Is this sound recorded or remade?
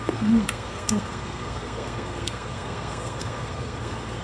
remade